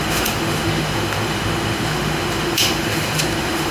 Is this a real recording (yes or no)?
no